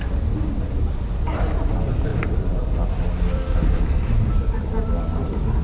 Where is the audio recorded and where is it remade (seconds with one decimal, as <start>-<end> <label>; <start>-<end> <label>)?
0.0-2.1 recorded; 2.1-4.9 remade; 4.9-5.6 recorded